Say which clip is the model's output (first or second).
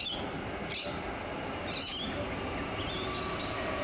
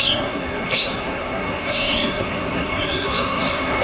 second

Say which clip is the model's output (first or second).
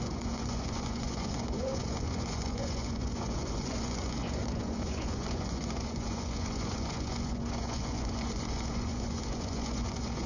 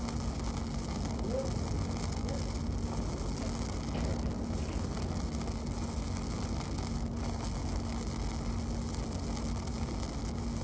first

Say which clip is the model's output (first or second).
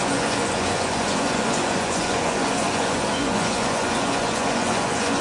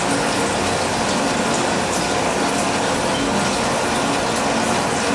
first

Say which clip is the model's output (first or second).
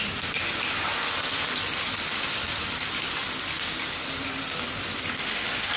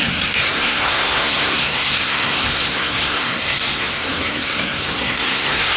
second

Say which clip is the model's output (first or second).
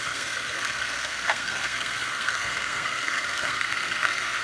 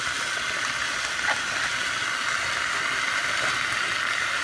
first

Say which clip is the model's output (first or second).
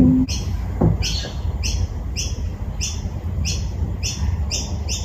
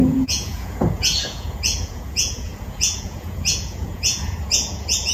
second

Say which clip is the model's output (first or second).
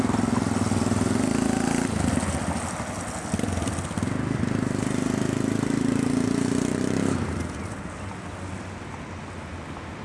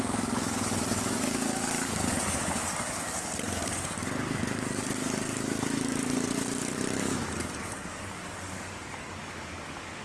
second